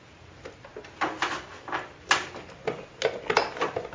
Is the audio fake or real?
real